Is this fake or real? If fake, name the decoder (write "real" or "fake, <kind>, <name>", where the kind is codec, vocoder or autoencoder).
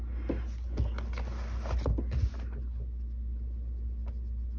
real